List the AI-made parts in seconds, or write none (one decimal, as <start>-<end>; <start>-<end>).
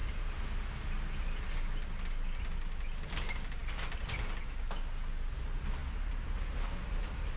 none